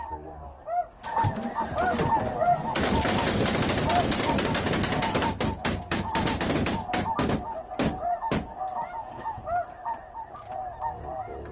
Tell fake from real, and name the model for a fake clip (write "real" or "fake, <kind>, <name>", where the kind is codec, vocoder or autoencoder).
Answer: real